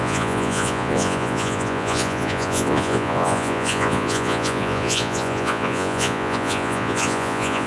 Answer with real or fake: fake